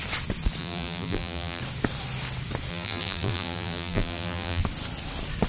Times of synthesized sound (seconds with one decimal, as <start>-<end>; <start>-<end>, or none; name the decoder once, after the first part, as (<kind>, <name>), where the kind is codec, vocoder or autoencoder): 0.6-1.6 (vocoder, BigVGAN v2); 2.7-4.6